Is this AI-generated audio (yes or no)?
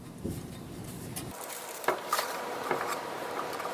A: yes